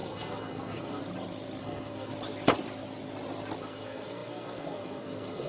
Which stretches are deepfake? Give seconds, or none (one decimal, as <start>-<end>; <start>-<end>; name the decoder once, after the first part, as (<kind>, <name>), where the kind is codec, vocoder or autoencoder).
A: 0.0-1.0 (codec, SNAC); 1.6-2.1; 3.6-5.5